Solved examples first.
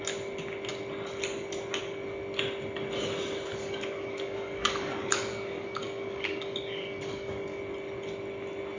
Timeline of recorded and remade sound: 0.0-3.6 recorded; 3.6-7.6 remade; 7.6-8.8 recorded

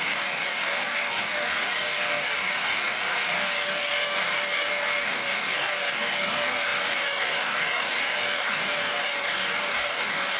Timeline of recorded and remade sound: 0.0-10.4 remade

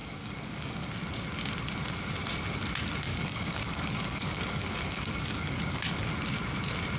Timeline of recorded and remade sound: 0.0-0.9 remade; 0.9-3.1 recorded; 3.1-6.1 remade; 6.1-7.0 recorded

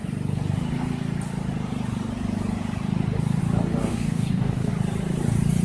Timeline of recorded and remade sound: 0.0-3.9 recorded; 3.9-4.7 remade; 4.7-5.6 recorded